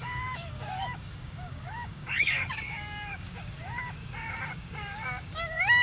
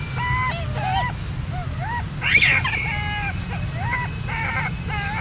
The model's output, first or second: first